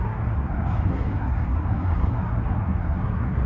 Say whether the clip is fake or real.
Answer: fake